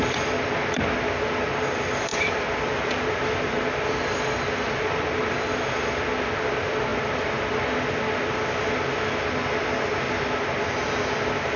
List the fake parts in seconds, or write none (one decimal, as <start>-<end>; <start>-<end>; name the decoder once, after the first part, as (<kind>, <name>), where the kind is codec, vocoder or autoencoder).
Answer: none